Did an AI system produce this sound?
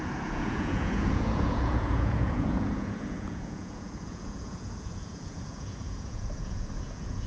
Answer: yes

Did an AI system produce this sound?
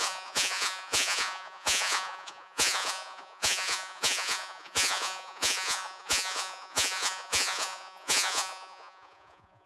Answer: yes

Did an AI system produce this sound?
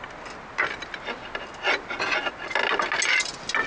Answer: no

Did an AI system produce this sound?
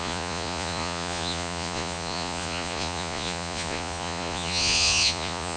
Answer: yes